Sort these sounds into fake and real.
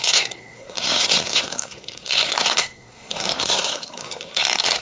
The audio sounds fake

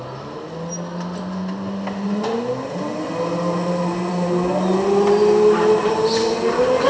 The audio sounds real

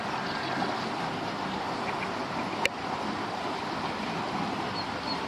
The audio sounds real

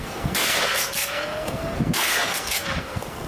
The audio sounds fake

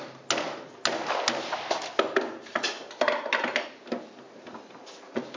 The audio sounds real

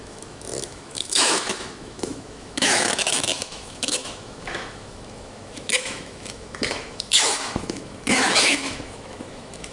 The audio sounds fake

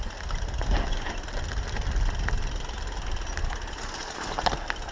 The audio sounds real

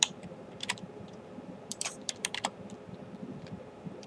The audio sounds fake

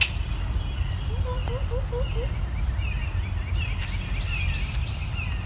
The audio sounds real